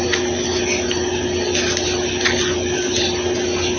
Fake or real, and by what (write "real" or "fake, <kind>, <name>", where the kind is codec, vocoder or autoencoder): real